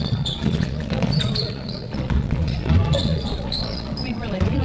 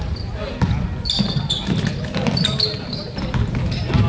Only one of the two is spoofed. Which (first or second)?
first